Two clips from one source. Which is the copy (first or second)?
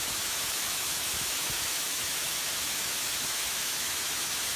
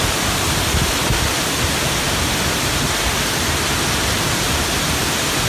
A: first